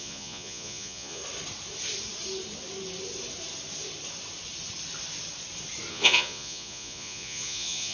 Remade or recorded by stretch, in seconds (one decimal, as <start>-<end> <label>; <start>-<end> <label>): 0.0-1.2 remade; 1.2-5.9 recorded; 5.9-7.9 remade